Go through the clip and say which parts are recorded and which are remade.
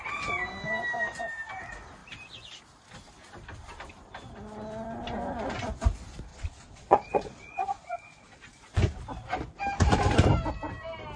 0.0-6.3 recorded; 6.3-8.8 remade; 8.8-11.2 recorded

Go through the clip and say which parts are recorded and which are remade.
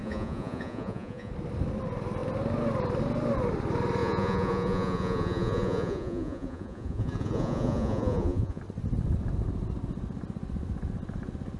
0.0-1.3 remade; 1.3-4.0 recorded; 4.0-8.6 remade; 8.6-11.6 recorded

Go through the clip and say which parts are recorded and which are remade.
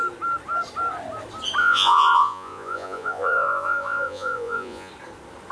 0.0-1.6 recorded; 1.6-4.9 remade; 4.9-5.5 recorded